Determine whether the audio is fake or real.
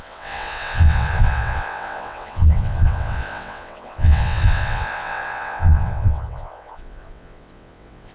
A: fake